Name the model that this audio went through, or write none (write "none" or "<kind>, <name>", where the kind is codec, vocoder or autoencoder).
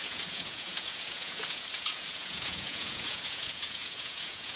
vocoder, Vocos